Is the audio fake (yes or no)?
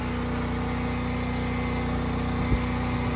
no